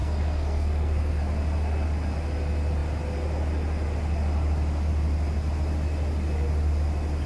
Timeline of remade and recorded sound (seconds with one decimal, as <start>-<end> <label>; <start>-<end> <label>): 0.0-1.2 remade; 1.2-7.3 recorded